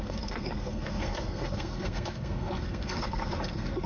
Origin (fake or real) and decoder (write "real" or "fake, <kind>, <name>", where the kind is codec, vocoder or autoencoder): fake, codec, SNAC